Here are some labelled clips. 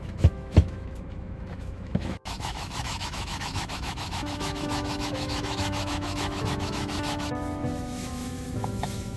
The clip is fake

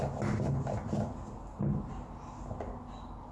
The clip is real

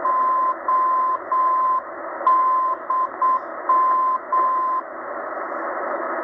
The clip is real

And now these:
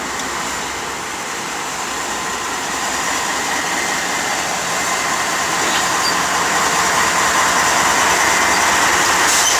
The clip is real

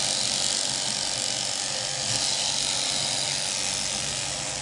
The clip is real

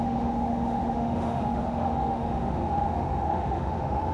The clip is fake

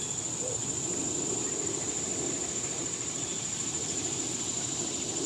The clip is real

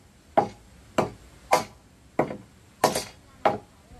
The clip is real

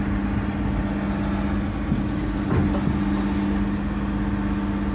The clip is real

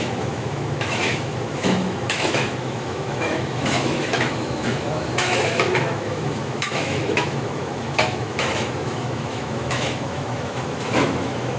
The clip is fake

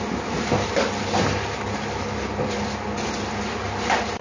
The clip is real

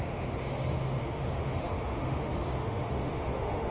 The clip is fake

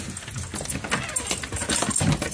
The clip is real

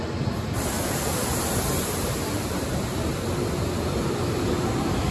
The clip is real